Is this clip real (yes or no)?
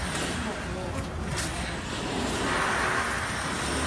yes